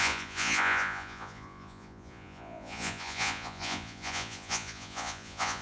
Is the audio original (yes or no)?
no